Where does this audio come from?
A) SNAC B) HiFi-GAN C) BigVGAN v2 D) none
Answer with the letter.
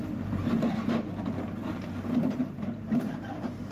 C